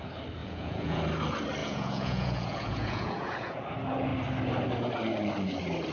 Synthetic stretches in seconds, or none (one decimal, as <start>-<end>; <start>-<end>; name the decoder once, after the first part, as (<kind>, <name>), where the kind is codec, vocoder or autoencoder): 0.4-1.0 (vocoder, Vocos); 1.6-3.6